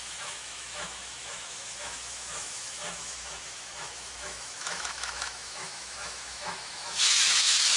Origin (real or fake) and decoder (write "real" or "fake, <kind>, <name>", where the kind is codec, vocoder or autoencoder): fake, autoencoder, DAC-VAE